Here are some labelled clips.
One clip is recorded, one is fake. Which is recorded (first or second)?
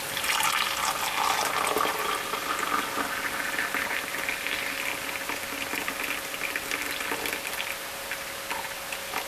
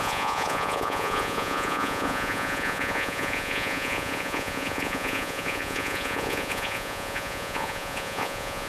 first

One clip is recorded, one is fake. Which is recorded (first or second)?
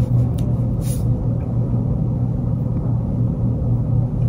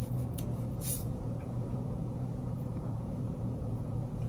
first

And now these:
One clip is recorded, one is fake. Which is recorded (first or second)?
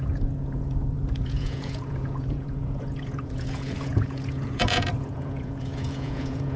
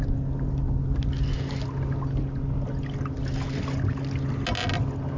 second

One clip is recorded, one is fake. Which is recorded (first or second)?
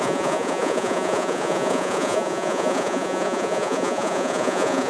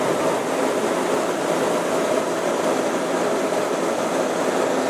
second